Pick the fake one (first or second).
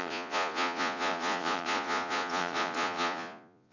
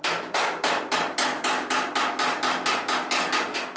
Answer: first